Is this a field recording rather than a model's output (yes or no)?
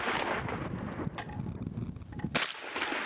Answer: yes